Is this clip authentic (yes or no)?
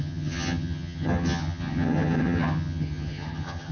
no